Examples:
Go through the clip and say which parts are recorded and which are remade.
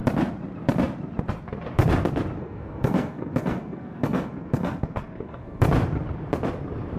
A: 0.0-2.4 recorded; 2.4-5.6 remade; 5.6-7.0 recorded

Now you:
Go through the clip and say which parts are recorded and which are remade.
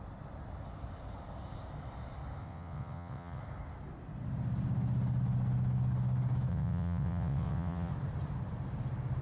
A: 0.0-2.4 recorded; 2.4-3.4 remade; 3.4-6.5 recorded; 6.5-7.9 remade; 7.9-9.2 recorded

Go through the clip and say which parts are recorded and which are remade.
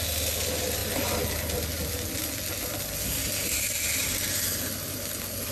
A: 0.0-5.5 recorded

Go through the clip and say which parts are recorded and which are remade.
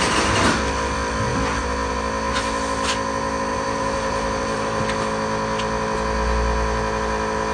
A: 0.0-3.5 recorded; 3.5-4.8 remade; 4.8-7.5 recorded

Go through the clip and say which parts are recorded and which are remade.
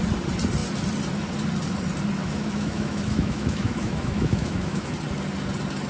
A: 0.0-2.2 recorded; 2.2-4.9 remade; 4.9-5.9 recorded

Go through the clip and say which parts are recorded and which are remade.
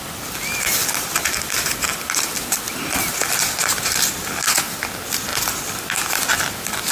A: 0.0-0.8 recorded; 0.8-2.8 remade; 2.8-3.6 recorded; 3.6-4.1 remade; 4.1-6.9 recorded